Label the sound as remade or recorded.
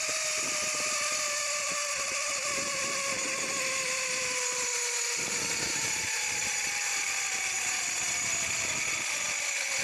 recorded